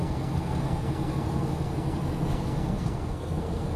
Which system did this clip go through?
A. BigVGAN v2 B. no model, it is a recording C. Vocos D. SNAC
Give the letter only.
D